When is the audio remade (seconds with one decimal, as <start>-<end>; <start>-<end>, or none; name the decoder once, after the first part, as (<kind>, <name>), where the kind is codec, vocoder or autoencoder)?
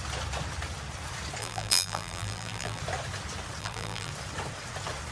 1.4-2.8 (vocoder, BigVGAN v2); 3.6-4.1